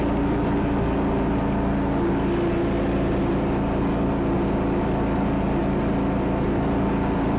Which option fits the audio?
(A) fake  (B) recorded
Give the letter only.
B